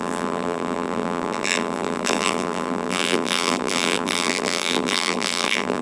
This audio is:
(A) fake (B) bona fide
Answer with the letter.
A